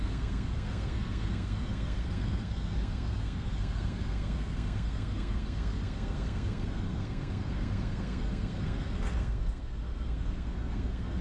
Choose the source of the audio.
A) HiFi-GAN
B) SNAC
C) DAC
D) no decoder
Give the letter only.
B